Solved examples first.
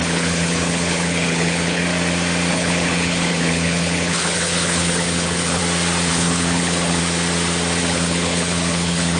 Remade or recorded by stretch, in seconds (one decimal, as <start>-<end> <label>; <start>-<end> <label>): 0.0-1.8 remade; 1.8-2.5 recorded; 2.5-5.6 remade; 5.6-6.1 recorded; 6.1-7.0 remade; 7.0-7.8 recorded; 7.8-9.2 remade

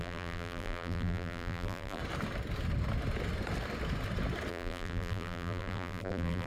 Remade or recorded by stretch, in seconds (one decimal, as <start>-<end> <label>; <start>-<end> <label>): 0.0-2.0 remade; 2.0-4.5 recorded; 4.5-6.5 remade

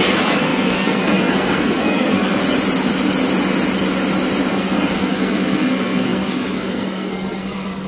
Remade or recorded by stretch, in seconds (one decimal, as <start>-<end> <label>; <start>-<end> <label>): 0.0-2.4 remade; 2.4-4.5 recorded; 4.5-7.9 remade

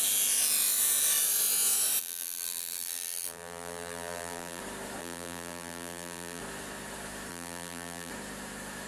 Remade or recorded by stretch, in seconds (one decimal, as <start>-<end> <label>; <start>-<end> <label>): 0.0-2.0 recorded; 2.0-4.6 remade; 4.6-5.0 recorded; 5.0-6.4 remade; 6.4-7.3 recorded; 7.3-8.1 remade; 8.1-8.9 recorded